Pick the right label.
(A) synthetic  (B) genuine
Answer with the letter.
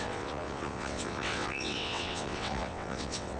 A